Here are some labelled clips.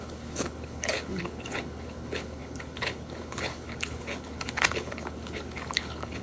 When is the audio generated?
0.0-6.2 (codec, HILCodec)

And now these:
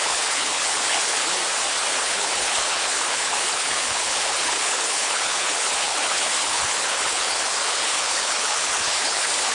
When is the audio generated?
0.0-1.4 (codec, HILCodec); 2.0-9.5

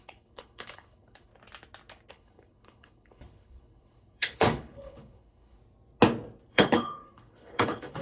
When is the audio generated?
0.0-1.3 (codec, HILCodec); 2.1-5.6; 6.5-8.0

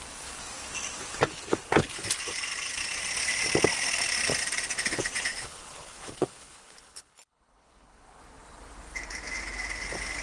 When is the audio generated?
5.3-8.2 (codec, HILCodec)

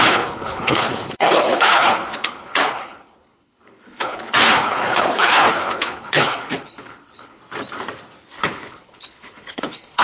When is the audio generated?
0.0-7.4 (codec, HILCodec); 8.4-10.0

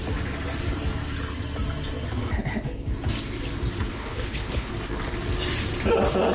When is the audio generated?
3.9-4.7 (codec, HILCodec)